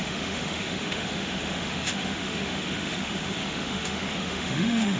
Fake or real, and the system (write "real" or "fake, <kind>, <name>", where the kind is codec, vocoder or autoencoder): fake, autoencoder, DAC-VAE